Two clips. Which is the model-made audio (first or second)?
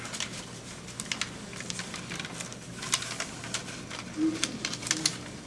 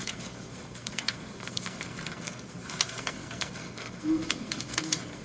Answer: second